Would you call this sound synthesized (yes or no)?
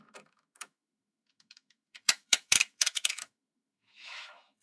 yes